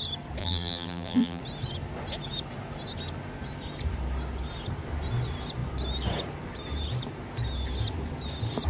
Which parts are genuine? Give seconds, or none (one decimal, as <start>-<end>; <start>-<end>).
0.0-0.4; 1.4-8.7